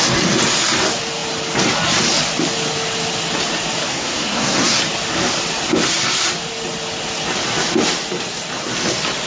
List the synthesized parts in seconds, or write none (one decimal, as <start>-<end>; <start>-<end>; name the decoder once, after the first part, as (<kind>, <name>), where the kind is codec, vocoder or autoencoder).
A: 3.9-4.8 (codec, SNAC)